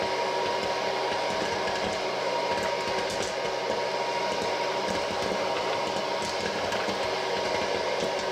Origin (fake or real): real